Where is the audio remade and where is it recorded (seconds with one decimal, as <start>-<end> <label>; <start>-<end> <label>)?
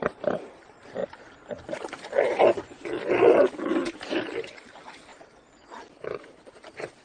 0.0-1.0 remade; 1.0-3.1 recorded; 3.1-7.0 remade